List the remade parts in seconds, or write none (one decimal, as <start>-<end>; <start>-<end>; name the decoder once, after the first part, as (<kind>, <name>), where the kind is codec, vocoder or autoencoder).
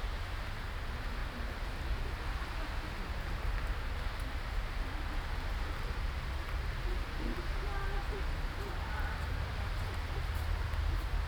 none